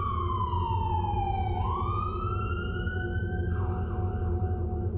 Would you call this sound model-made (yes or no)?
no